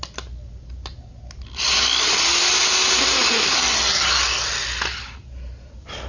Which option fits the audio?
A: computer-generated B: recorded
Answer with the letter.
B